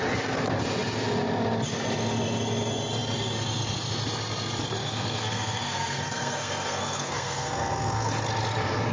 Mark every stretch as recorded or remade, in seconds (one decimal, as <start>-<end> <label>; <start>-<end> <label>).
0.0-4.8 recorded; 4.8-8.1 remade; 8.1-8.9 recorded